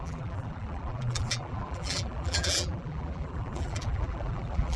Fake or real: fake